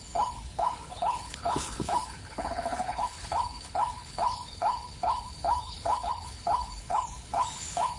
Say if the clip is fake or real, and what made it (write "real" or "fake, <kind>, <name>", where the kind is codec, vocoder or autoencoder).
fake, codec, HILCodec